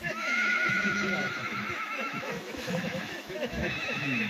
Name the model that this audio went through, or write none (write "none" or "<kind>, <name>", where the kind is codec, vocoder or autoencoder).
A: autoencoder, DAC-VAE